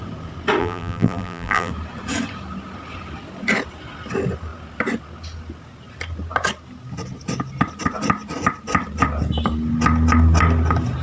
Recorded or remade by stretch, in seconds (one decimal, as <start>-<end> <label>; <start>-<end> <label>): 0.0-0.6 recorded; 0.6-1.7 remade; 1.7-11.0 recorded